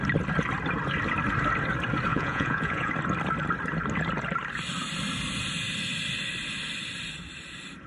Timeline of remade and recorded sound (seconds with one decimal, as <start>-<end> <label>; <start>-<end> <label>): 0.0-2.1 recorded; 2.1-2.9 remade; 2.9-7.9 recorded